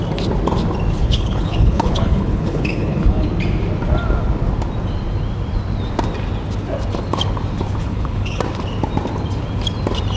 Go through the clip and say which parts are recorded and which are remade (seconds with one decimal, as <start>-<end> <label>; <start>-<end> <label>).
0.0-1.0 recorded; 1.0-3.3 remade; 3.3-7.8 recorded; 7.8-8.4 remade; 8.4-10.2 recorded